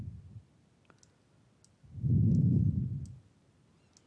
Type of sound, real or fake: real